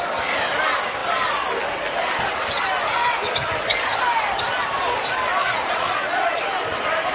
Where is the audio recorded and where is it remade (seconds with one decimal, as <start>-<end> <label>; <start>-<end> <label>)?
0.0-5.4 recorded; 5.4-6.4 remade; 6.4-7.1 recorded